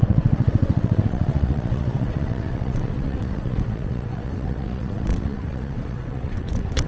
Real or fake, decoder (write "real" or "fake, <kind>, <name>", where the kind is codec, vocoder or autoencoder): fake, vocoder, WaveNeXt